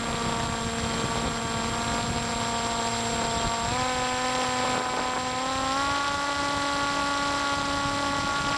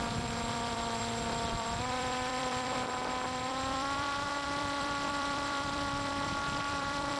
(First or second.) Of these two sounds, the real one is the first